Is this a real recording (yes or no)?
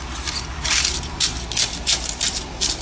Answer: yes